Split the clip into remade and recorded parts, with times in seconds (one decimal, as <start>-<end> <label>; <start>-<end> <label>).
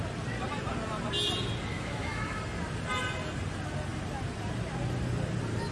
0.0-1.7 recorded; 1.7-2.4 remade; 2.4-5.7 recorded